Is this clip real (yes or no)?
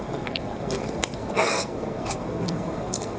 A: no